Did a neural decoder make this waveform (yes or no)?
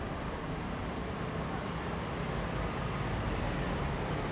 no